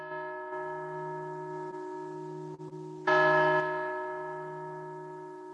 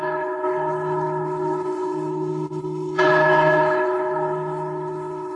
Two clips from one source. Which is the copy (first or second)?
second